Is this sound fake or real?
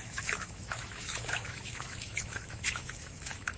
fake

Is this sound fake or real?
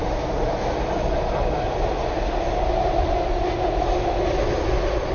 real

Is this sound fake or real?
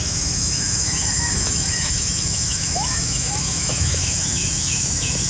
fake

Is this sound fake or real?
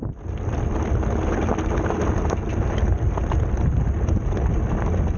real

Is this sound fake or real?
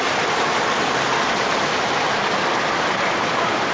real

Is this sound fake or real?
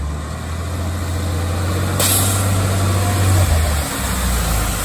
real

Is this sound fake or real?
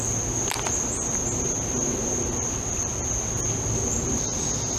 real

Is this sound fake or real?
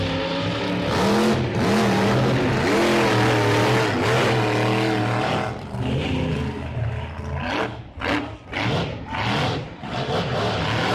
real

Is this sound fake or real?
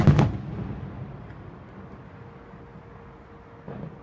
real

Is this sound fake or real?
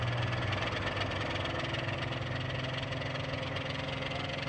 real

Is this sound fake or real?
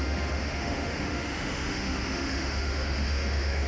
fake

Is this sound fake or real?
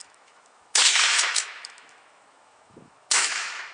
fake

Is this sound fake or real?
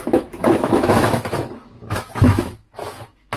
fake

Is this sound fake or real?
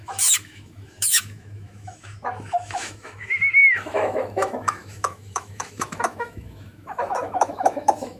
fake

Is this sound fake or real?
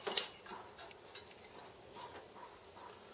real